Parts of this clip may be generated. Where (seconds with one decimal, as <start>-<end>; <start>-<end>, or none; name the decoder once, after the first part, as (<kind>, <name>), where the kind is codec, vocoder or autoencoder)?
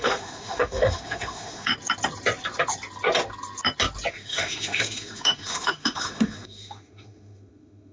0.0-1.7 (autoencoder, DAC-VAE); 4.1-7.9